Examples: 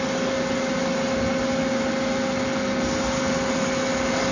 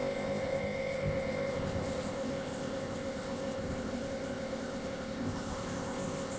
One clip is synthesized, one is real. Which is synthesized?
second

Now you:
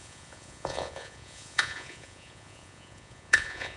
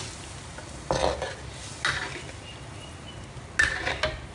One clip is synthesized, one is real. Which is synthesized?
first